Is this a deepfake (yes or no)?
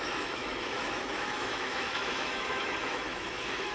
yes